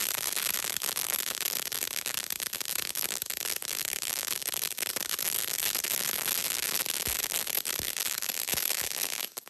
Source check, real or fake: fake